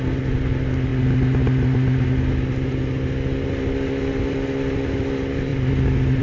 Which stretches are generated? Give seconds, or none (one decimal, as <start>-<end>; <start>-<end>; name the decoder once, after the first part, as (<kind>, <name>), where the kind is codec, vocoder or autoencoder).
none